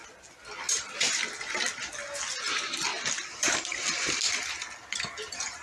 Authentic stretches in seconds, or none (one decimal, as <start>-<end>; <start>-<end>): 0.0-5.6